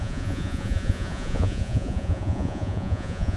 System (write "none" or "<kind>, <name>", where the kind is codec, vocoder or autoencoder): vocoder, Vocos